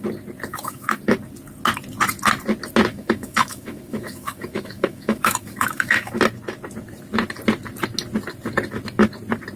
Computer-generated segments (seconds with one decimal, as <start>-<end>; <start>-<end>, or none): 0.5-1.0; 2.9-6.2